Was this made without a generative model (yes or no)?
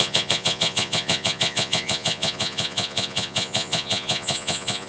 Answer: no